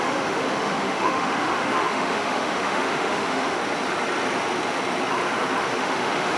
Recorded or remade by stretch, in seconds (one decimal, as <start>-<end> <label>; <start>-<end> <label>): 0.0-3.6 remade; 3.6-5.6 recorded; 5.6-6.4 remade